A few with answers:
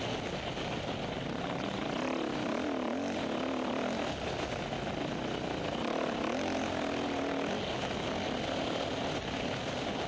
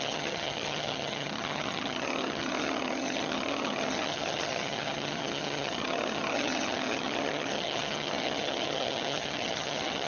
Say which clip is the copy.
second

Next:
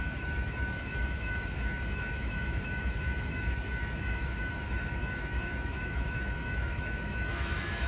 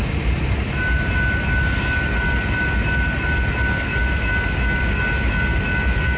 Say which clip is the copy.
first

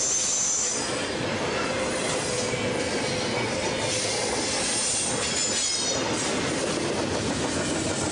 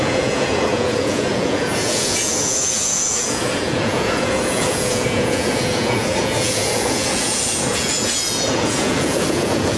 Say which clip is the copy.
second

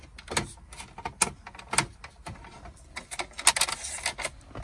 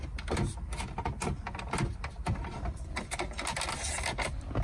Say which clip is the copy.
second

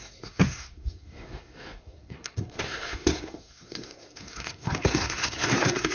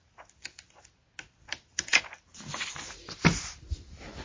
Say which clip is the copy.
first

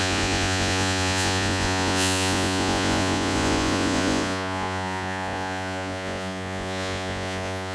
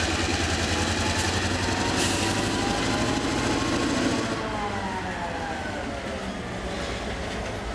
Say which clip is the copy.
first